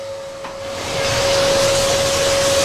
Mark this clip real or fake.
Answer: real